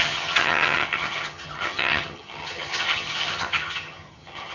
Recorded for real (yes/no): no